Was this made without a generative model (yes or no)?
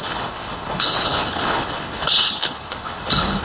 no